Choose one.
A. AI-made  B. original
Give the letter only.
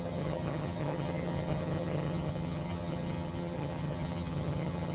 A